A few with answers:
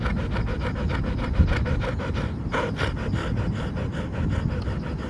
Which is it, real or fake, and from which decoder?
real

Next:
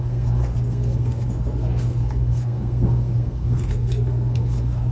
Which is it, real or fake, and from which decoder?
fake, codec, SNAC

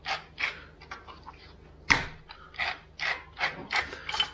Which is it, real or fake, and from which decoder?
real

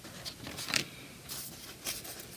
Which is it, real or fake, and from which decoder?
real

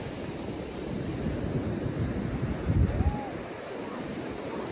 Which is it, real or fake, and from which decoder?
real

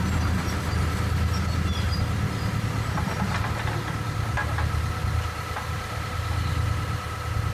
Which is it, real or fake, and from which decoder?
real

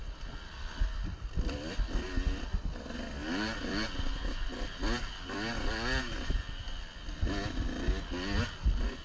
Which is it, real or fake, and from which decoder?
real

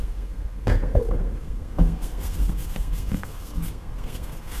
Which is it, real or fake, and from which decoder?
fake, codec, SNAC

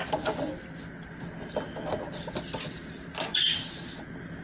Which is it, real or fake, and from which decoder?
real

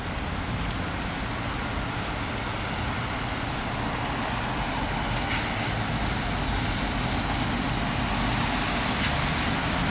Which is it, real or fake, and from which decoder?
real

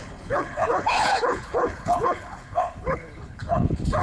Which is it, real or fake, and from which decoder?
fake, codec, HILCodec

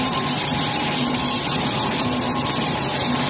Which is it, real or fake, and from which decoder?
fake, vocoder, BigVGAN v2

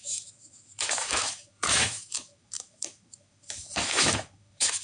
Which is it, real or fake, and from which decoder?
fake, autoencoder, DAC-VAE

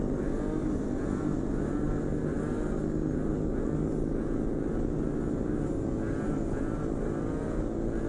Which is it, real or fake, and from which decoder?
real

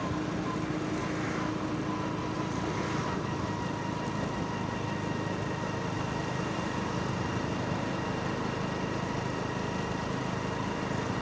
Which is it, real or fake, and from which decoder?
real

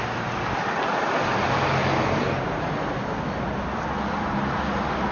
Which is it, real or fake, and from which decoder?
real